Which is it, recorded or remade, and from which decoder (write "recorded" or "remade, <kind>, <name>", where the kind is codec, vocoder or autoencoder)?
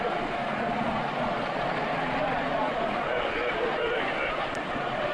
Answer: remade, vocoder, Vocos